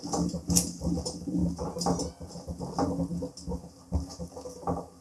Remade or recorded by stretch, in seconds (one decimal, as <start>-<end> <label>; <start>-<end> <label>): 0.0-5.0 recorded